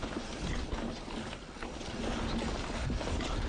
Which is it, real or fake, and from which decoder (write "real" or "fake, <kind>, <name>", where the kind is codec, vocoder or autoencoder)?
real